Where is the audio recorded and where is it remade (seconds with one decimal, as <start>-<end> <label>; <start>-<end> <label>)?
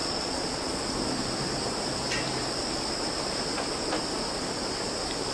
0.0-0.8 remade; 0.8-5.3 recorded